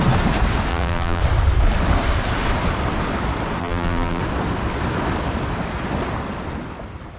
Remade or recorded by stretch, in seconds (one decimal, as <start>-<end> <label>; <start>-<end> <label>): 0.0-0.7 recorded; 0.7-1.2 remade; 1.2-3.6 recorded; 3.6-4.2 remade; 4.2-7.2 recorded